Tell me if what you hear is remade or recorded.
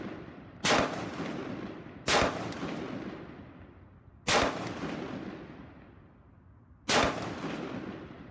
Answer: recorded